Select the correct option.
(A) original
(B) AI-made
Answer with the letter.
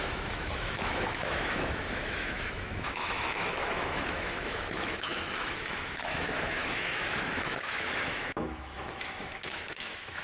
B